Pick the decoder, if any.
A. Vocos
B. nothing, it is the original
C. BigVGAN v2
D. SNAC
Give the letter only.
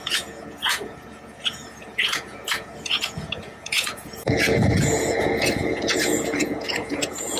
A